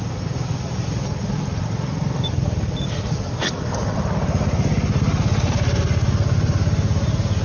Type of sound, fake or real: real